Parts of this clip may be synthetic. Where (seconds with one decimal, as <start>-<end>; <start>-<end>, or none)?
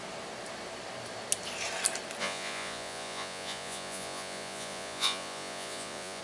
2.2-6.2